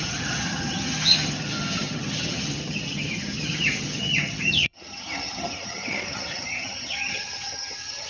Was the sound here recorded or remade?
remade